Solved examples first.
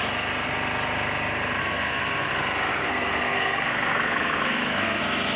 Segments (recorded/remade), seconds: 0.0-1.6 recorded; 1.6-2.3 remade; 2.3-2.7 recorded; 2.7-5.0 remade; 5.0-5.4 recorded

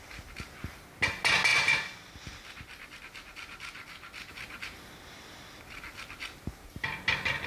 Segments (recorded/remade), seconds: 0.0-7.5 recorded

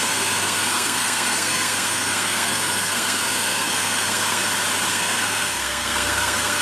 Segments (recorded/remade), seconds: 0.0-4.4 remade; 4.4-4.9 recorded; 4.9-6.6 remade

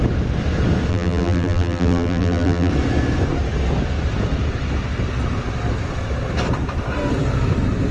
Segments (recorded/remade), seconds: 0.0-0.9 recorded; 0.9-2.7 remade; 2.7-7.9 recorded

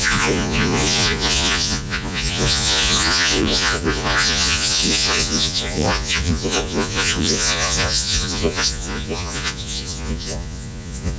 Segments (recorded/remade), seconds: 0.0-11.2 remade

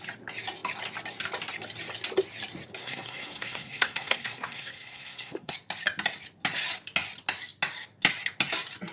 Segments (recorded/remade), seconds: 0.0-2.8 recorded; 2.8-5.5 remade; 5.5-8.9 recorded

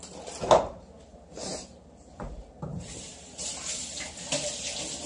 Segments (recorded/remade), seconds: 0.0-1.1 recorded; 1.1-4.1 remade; 4.1-5.1 recorded